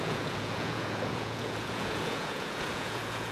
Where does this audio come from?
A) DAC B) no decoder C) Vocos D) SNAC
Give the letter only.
C